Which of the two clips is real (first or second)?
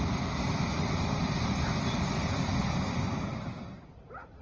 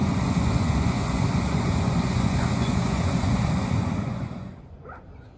first